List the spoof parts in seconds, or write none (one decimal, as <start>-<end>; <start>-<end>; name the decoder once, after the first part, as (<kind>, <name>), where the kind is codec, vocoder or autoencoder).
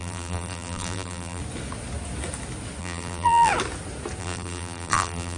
0.0-1.4 (vocoder, BigVGAN v2); 2.8-3.5; 4.2-5.4